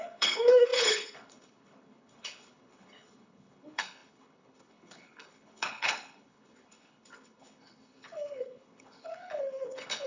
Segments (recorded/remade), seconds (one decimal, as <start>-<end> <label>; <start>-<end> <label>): 0.0-10.1 remade